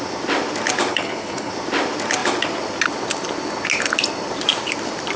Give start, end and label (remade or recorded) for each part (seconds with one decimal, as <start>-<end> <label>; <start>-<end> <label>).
0.0-0.9 recorded; 0.9-1.5 remade; 1.5-5.2 recorded